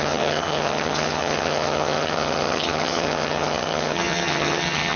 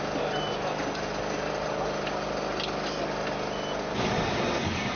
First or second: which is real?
second